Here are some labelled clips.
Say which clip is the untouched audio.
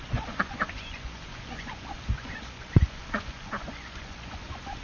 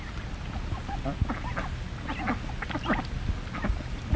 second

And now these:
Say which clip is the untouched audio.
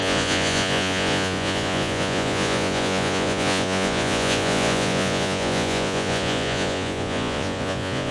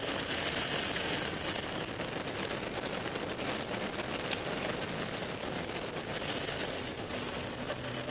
second